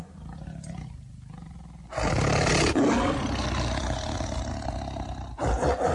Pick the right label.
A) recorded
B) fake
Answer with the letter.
A